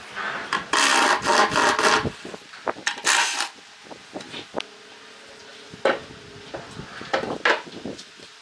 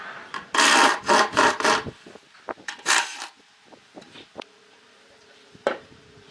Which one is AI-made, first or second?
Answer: second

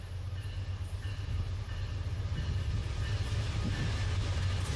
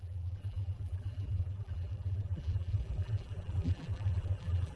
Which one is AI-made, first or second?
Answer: second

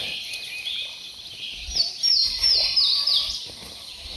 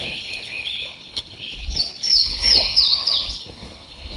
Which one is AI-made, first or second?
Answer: second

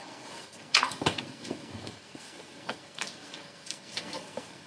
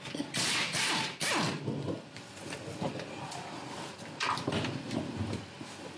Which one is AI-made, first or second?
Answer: first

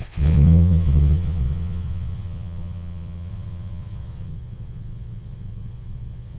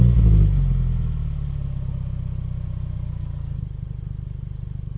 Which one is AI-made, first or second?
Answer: first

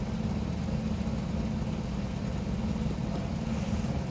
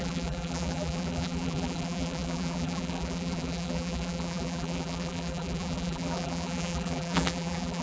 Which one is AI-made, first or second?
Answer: second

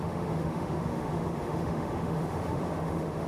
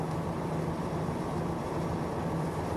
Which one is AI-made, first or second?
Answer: first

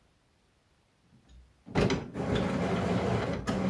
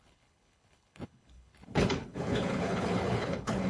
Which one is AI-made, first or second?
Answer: second